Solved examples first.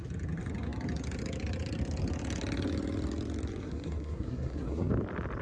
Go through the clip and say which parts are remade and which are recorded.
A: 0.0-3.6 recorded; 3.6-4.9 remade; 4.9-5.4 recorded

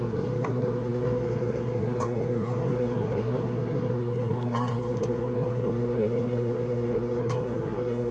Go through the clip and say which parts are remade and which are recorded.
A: 0.0-8.1 remade

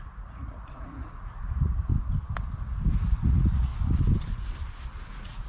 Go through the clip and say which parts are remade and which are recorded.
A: 0.0-1.9 remade; 1.9-3.2 recorded; 3.2-3.7 remade; 3.7-5.1 recorded; 5.1-5.5 remade

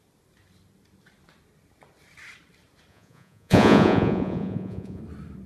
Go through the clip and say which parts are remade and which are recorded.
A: 0.0-2.9 recorded; 2.9-5.0 remade; 5.0-5.5 recorded

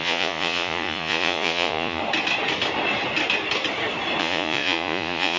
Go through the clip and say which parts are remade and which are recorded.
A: 0.0-2.0 remade; 2.0-4.2 recorded; 4.2-5.4 remade

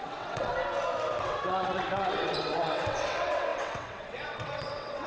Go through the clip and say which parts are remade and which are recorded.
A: 0.0-0.5 remade; 0.5-1.2 recorded; 1.2-5.1 remade

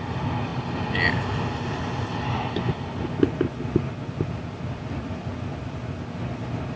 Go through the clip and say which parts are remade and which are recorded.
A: 0.0-0.5 remade; 0.5-4.6 recorded; 4.6-5.3 remade; 5.3-6.8 recorded